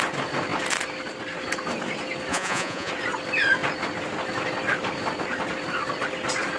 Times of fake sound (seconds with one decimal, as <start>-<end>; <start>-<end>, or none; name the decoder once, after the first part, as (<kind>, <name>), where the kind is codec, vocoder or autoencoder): 2.3-2.9 (vocoder, Vocos)